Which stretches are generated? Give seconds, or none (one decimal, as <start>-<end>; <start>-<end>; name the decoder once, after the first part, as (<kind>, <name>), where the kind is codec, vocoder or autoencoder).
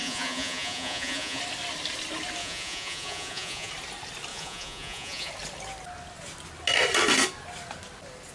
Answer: 0.0-1.4 (vocoder, Vocos); 2.4-3.7; 4.3-5.3